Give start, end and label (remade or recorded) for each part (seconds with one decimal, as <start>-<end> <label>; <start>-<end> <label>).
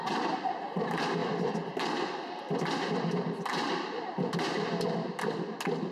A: 0.0-5.9 recorded